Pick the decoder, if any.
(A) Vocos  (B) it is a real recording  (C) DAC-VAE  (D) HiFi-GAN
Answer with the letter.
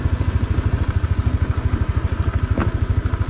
B